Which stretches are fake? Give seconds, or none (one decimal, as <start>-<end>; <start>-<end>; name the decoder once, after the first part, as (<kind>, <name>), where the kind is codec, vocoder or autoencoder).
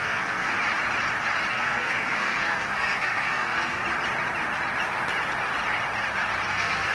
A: 0.0-0.5 (codec, SNAC); 1.5-3.8; 6.5-6.9